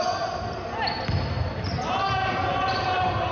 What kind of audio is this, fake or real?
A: real